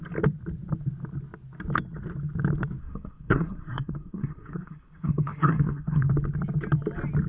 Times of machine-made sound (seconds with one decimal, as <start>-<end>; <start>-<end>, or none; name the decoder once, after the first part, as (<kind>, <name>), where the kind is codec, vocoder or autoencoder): 2.8-6.1 (codec, SNAC)